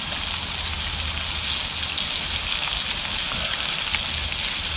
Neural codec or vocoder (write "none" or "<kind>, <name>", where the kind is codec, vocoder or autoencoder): none